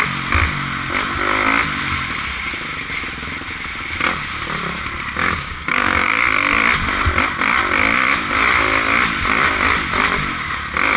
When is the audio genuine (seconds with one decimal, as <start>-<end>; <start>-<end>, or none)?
0.0-5.2; 6.1-11.0